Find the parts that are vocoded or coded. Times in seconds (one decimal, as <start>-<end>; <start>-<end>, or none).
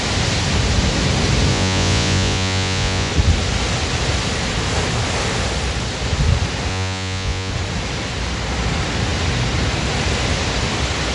1.5-3.1; 6.7-7.5